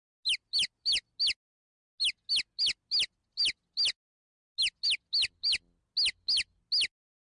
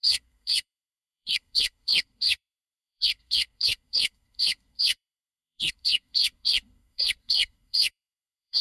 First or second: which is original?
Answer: first